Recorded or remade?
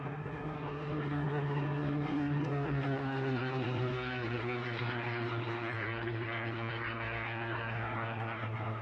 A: remade